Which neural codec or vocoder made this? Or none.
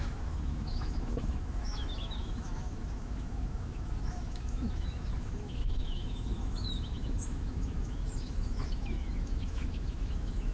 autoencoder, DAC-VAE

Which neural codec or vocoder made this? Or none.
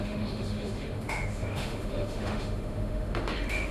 autoencoder, DAC-VAE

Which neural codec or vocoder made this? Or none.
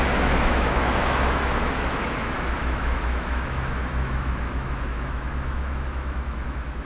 autoencoder, DAC-VAE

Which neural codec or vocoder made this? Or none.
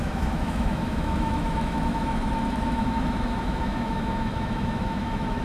autoencoder, DAC-VAE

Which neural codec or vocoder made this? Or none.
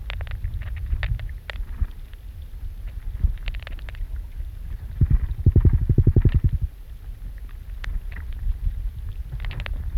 none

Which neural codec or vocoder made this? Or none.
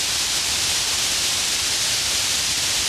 none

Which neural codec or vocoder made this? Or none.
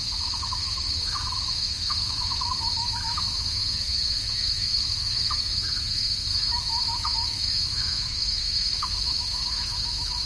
autoencoder, DAC-VAE